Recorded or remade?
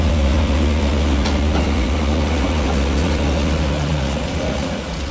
remade